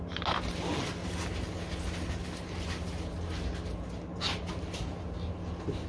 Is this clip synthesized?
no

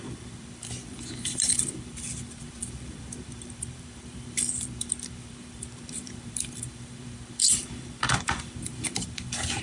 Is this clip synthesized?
yes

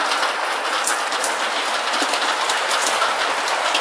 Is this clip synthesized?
no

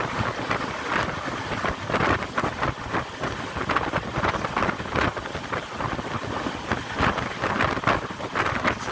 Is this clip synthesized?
no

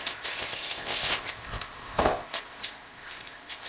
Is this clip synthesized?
yes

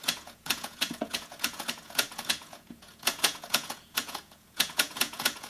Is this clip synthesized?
yes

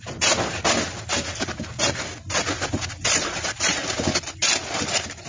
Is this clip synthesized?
no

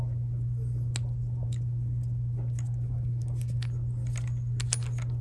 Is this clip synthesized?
no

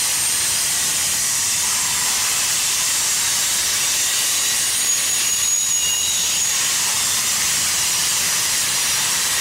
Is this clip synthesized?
yes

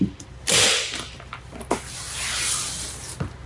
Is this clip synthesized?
no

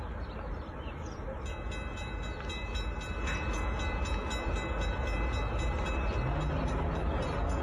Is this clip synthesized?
no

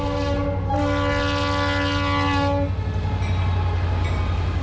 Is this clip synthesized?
no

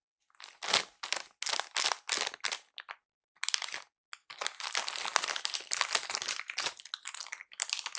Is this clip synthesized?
no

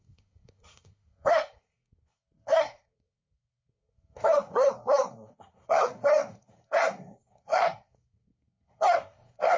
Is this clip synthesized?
yes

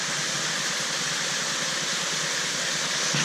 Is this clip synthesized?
no